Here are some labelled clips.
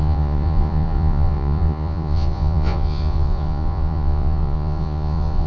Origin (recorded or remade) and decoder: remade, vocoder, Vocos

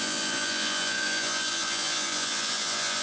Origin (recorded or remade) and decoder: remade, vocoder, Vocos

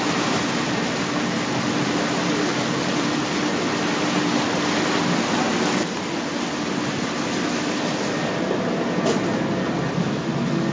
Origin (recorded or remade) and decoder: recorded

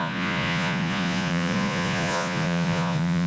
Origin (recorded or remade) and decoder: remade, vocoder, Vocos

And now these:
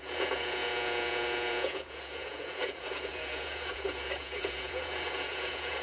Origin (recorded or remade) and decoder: remade, vocoder, Vocos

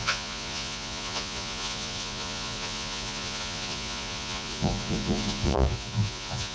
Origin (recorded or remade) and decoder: remade, vocoder, Vocos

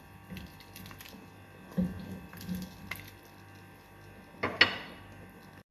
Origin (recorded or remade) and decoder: recorded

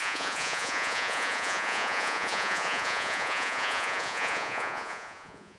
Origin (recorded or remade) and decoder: remade, vocoder, Vocos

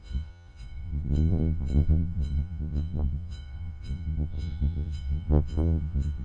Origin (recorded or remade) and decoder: remade, vocoder, Vocos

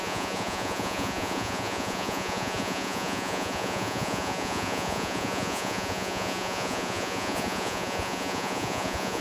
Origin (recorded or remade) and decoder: remade, vocoder, Vocos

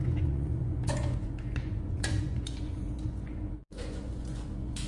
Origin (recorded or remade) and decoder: remade, vocoder, Vocos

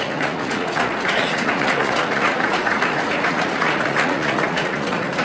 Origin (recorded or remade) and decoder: remade, vocoder, Vocos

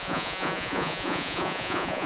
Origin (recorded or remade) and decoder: remade, vocoder, Vocos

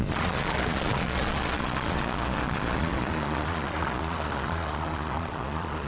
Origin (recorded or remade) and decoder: remade, vocoder, Vocos